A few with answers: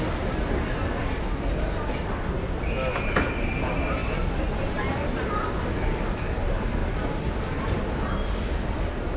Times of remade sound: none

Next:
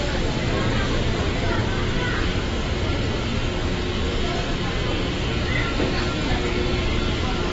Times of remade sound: none

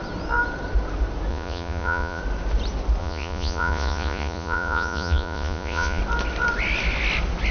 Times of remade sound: 1.3-2.2 (vocoder, Vocos); 3.0-6.0